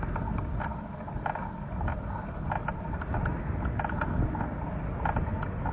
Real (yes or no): yes